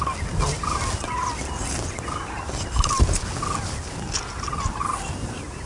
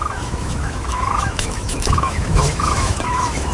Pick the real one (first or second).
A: first